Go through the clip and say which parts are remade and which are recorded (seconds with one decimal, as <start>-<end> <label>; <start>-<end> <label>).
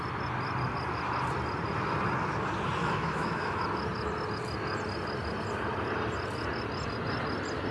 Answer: 0.0-2.8 recorded; 2.8-3.6 remade; 3.6-7.7 recorded